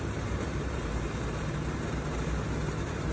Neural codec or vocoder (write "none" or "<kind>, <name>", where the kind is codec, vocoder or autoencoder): vocoder, BigVGAN v2